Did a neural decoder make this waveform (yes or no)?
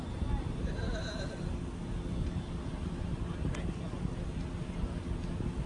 no